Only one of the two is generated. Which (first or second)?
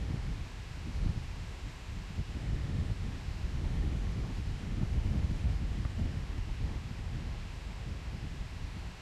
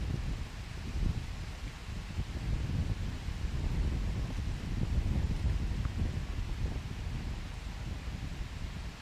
first